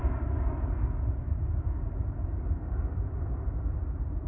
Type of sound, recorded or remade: recorded